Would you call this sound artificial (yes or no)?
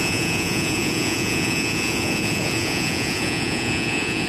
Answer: yes